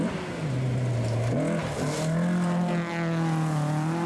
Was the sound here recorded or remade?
recorded